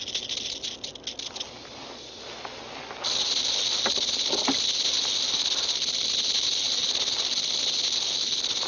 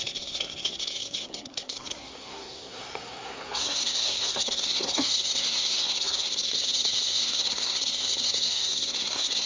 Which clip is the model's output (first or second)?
second